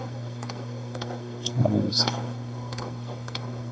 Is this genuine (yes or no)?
no